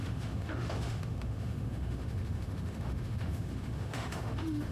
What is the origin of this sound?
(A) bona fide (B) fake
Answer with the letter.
B